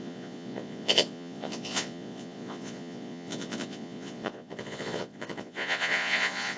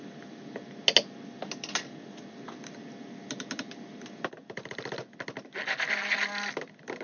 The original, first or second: second